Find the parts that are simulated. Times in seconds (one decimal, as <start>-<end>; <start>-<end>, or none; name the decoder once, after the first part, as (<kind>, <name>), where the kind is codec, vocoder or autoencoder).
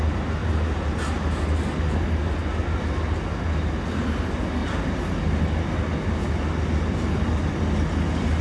4.6-5.4 (vocoder, BigVGAN v2)